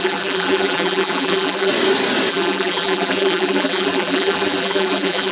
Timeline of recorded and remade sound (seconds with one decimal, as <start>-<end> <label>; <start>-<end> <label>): 0.0-1.7 remade; 1.7-2.3 recorded; 2.3-5.3 remade